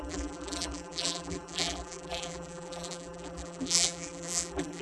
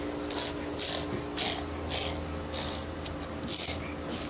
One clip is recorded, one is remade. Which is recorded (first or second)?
second